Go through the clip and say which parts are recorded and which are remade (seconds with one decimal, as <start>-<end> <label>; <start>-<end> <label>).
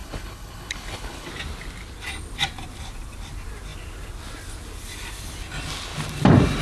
0.0-1.3 remade; 1.3-6.6 recorded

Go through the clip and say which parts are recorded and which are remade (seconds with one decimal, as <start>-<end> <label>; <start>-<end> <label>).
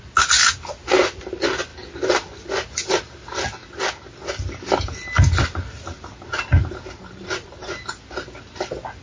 0.0-9.0 recorded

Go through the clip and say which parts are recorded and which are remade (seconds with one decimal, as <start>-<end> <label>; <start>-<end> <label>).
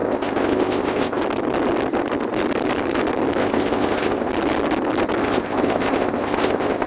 0.0-1.2 remade; 1.2-3.4 recorded; 3.4-4.3 remade; 4.3-5.2 recorded; 5.2-6.9 remade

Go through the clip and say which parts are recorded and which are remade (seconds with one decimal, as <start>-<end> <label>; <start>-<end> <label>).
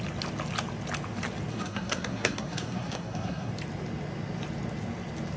0.0-1.5 recorded; 1.5-3.5 remade; 3.5-5.4 recorded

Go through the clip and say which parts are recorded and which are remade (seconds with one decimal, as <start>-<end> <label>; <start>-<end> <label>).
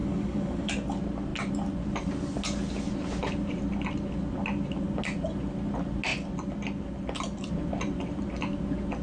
0.0-0.7 remade; 0.7-9.0 recorded